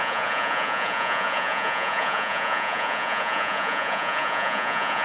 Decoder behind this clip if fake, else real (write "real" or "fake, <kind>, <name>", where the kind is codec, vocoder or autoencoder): fake, vocoder, Vocos